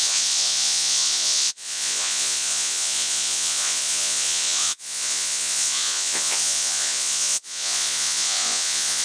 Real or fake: fake